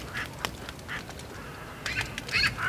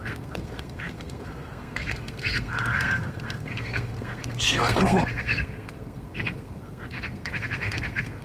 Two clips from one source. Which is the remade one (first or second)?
second